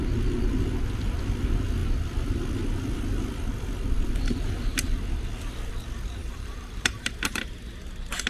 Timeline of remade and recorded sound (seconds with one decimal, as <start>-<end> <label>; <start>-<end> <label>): 0.0-6.2 recorded; 6.2-7.4 remade; 7.4-8.3 recorded